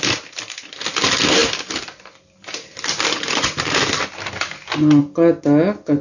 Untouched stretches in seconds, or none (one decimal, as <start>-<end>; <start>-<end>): 0.0-6.0